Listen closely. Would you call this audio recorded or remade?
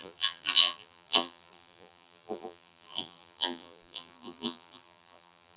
remade